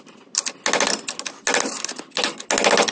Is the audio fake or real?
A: real